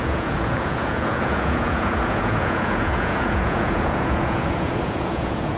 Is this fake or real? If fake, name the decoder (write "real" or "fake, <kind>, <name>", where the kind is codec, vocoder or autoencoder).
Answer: fake, vocoder, Vocos